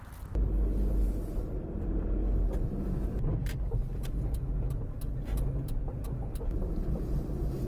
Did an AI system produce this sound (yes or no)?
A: no